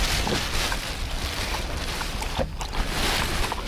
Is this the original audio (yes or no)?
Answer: yes